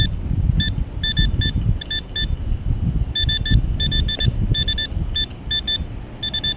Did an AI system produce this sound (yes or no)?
no